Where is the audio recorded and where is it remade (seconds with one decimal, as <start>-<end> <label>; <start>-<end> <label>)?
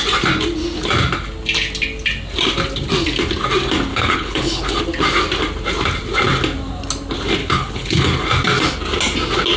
0.0-3.9 recorded; 3.9-4.8 remade; 4.8-7.4 recorded; 7.4-8.1 remade; 8.1-9.6 recorded